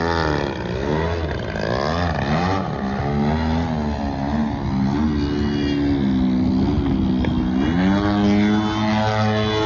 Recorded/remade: recorded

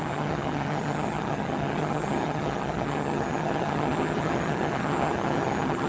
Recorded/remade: remade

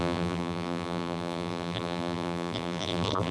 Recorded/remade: remade